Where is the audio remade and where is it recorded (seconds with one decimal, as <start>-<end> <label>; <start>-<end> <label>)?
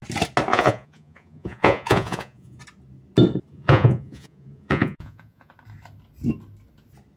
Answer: 0.0-0.5 recorded; 0.5-2.6 remade; 2.6-3.5 recorded; 3.5-5.5 remade; 5.5-7.2 recorded